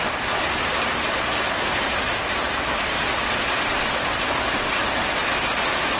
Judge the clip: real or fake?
real